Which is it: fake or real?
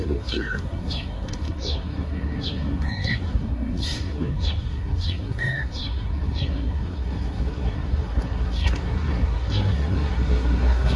fake